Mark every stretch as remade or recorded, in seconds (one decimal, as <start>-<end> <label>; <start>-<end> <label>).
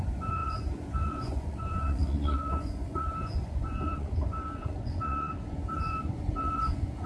0.0-7.1 remade